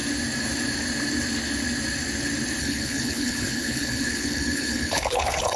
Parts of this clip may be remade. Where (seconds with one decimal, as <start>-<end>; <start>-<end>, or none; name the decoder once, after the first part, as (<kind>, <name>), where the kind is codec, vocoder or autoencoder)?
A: 2.6-5.6 (codec, HILCodec)

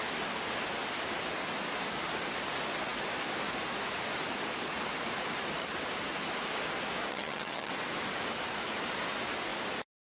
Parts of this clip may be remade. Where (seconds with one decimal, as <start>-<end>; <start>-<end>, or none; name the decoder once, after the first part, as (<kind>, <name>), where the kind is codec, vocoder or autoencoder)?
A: 7.1-7.7 (vocoder, HiFi-GAN)

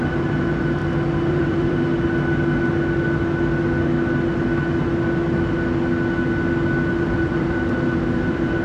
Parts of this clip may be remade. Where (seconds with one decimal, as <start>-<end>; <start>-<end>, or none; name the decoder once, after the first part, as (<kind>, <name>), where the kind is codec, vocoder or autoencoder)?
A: 0.0-0.8 (vocoder, BigVGAN v2); 1.3-1.9; 7.0-8.6

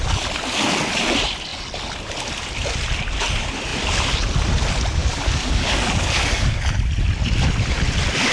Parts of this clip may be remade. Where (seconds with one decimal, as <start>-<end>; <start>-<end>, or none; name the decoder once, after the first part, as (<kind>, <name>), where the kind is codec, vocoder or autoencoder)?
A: 5.0-6.6 (codec, DAC)

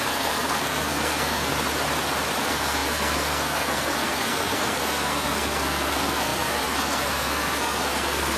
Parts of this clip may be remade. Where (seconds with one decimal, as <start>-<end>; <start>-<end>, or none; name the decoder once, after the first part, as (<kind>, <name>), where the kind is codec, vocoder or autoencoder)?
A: 0.0-1.5 (codec, SNAC); 2.4-8.4

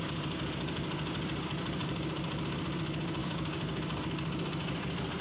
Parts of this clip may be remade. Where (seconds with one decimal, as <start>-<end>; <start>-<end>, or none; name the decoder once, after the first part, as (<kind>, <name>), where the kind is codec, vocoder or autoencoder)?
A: 3.2-3.8 (codec, DAC)

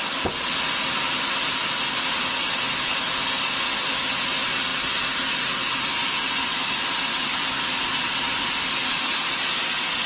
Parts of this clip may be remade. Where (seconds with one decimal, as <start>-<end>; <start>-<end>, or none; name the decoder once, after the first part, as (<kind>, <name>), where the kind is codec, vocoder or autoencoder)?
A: none

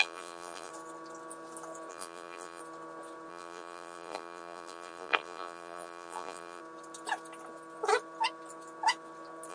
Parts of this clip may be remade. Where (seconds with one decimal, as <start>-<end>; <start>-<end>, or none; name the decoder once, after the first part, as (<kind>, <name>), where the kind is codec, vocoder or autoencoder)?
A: 0.0-0.7 (vocoder, BigVGAN v2); 1.9-2.6; 3.3-6.6